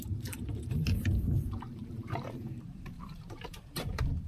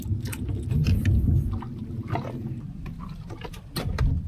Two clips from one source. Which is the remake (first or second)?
first